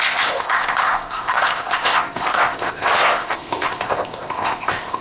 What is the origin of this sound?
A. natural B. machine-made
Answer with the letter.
B